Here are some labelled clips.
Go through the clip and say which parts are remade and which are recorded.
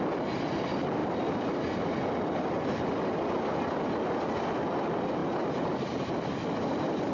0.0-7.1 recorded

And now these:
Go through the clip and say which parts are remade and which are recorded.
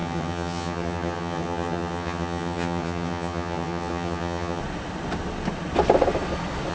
0.0-4.6 remade; 4.6-6.7 recorded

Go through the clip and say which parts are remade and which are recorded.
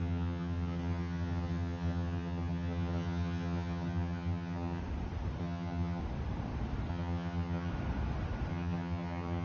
0.0-4.8 remade; 4.8-5.4 recorded; 5.4-6.0 remade; 6.0-6.9 recorded; 6.9-7.7 remade; 7.7-8.5 recorded; 8.5-9.4 remade